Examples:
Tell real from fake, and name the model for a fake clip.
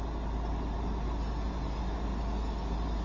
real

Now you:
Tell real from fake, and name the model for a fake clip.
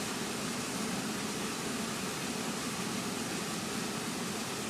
real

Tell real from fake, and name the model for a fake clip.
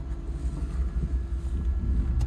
real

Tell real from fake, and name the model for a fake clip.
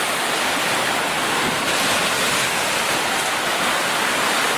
real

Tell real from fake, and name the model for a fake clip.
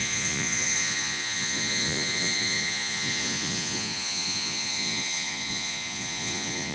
fake, vocoder, Vocos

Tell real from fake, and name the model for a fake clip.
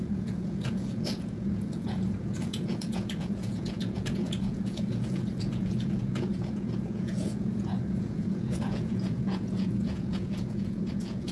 fake, vocoder, Vocos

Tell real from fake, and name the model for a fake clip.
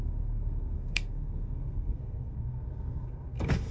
fake, codec, SNAC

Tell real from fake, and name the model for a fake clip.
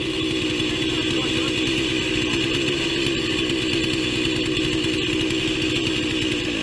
real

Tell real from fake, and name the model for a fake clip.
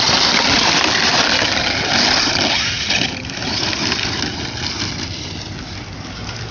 real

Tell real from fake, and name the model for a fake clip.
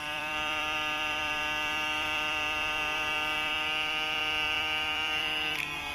fake, vocoder, BigVGAN v2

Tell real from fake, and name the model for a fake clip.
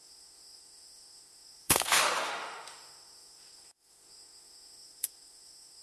fake, autoencoder, DAC-VAE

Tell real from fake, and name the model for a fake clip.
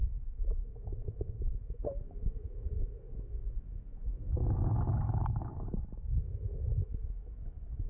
fake, autoencoder, DAC-VAE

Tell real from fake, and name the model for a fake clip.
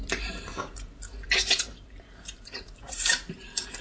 fake, vocoder, BigVGAN v2